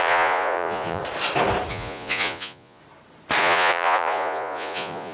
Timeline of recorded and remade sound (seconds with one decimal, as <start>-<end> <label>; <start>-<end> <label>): 0.0-1.0 remade; 1.0-1.7 recorded; 1.7-2.8 remade; 2.8-3.4 recorded; 3.4-5.1 remade

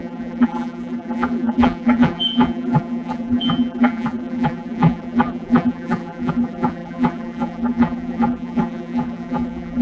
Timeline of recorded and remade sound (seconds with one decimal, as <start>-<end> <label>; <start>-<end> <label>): 0.0-9.8 remade

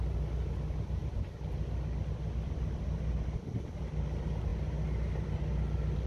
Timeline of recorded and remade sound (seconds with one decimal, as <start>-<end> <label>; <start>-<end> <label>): 0.0-6.1 recorded

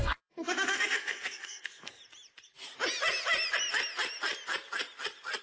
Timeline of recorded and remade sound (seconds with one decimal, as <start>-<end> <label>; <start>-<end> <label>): 0.0-2.0 remade; 2.0-5.4 recorded

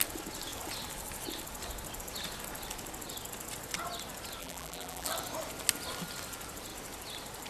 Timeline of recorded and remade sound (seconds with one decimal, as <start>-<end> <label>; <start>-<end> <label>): 0.0-4.4 recorded; 4.4-5.1 remade; 5.1-7.5 recorded